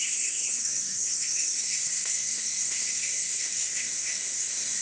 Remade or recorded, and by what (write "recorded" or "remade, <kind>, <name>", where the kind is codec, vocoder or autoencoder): remade, codec, SNAC